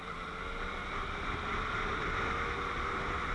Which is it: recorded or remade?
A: recorded